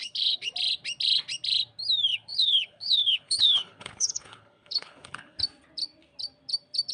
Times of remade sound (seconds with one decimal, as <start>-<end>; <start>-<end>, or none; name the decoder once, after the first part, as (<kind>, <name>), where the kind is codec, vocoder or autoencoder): 0.0-0.5 (codec, HILCodec); 2.1-5.4